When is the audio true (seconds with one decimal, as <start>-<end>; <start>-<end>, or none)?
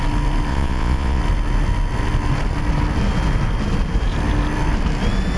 0.0-0.5; 1.2-5.4